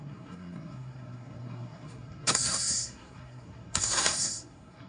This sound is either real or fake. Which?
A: fake